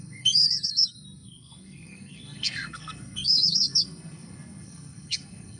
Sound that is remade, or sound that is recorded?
remade